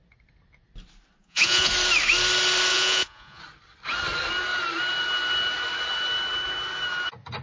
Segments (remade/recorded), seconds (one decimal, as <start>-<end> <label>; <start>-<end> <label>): 0.0-1.2 recorded; 1.2-1.7 remade; 1.7-2.7 recorded; 2.7-3.4 remade; 3.4-7.4 recorded